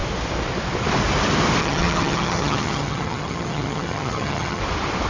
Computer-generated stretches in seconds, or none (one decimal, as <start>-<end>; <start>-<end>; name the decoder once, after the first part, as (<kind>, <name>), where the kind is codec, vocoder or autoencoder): 1.6-4.6 (vocoder, HiFi-GAN)